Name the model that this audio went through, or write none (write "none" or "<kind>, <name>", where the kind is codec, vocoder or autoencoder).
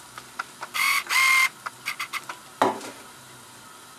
none